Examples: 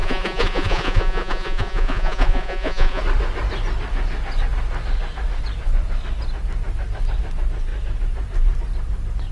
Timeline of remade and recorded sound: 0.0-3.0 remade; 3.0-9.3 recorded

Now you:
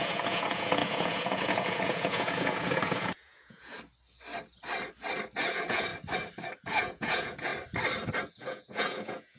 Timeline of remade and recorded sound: 0.0-3.7 remade; 3.7-5.4 recorded; 5.4-5.9 remade; 5.9-6.6 recorded; 6.6-7.5 remade; 7.5-8.3 recorded; 8.3-9.4 remade

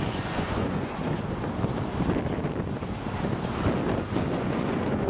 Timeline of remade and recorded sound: 0.0-1.0 remade; 1.0-4.1 recorded; 4.1-5.1 remade